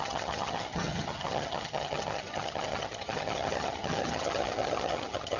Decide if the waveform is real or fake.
fake